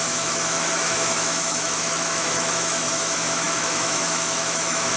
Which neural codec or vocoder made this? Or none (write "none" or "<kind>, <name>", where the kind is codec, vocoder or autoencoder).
autoencoder, DAC-VAE